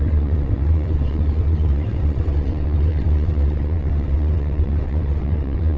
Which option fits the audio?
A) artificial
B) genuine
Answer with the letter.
A